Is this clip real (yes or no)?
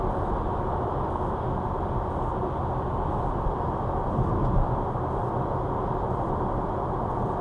yes